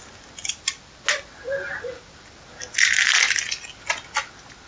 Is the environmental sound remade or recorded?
recorded